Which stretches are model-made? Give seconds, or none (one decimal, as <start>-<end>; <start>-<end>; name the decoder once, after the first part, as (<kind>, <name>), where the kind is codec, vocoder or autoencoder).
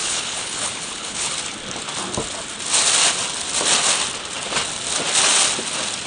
0.0-1.3 (codec, HILCodec)